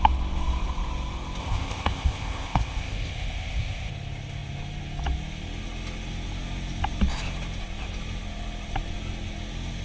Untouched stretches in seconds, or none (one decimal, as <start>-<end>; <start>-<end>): 0.0-1.4; 3.9-9.8